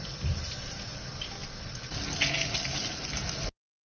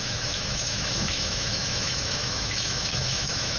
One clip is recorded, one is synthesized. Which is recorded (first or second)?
first